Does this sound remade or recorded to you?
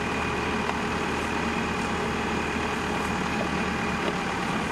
recorded